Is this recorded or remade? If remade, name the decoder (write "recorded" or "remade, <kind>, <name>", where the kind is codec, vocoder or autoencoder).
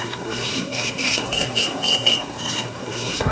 remade, codec, SNAC